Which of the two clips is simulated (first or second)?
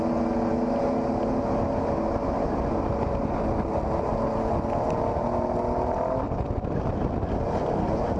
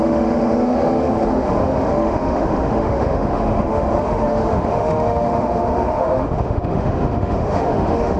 second